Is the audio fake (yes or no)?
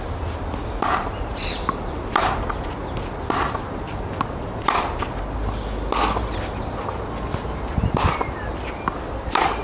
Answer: no